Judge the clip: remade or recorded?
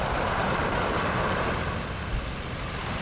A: remade